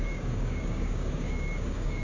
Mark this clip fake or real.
fake